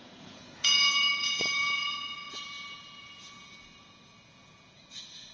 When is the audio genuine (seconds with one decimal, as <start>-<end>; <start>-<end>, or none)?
none

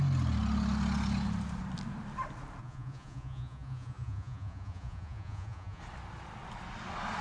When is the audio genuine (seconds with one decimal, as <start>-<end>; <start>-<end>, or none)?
0.0-2.6; 5.8-7.2

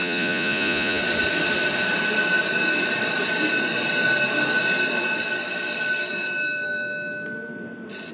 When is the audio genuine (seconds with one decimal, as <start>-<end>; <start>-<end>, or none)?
1.0-8.1